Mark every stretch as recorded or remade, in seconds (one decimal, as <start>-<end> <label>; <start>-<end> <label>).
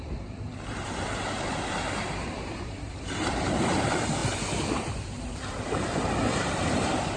0.0-4.2 remade; 4.2-4.7 recorded; 4.7-7.2 remade